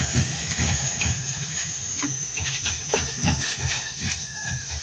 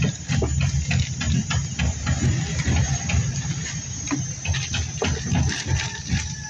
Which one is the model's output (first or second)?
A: first